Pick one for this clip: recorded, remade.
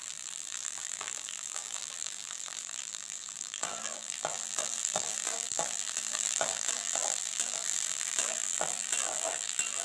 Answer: remade